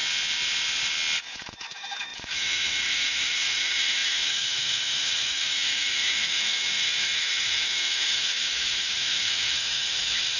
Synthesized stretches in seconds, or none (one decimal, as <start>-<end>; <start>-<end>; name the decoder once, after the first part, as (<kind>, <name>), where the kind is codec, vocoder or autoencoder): 1.2-10.4 (autoencoder, DAC-VAE)